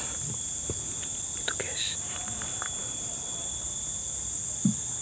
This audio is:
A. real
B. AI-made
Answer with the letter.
A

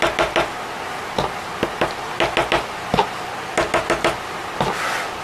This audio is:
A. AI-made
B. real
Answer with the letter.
B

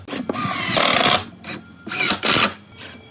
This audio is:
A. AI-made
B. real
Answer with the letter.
B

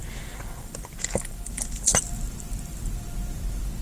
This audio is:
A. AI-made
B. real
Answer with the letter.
A